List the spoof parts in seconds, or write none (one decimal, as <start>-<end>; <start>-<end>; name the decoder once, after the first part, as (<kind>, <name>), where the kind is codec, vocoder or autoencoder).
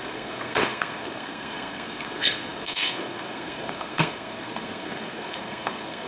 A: 0.0-6.1 (codec, SNAC)